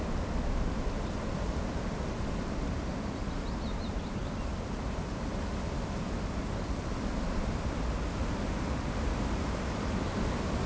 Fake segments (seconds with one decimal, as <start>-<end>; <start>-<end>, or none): 3.2-4.2; 9.3-10.7